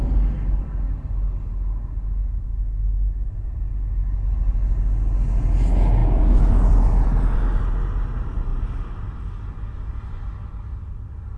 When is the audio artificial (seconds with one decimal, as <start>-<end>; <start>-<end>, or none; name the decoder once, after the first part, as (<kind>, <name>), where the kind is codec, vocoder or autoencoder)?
6.0-7.6 (vocoder, BigVGAN v2)